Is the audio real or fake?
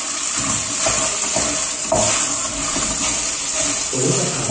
real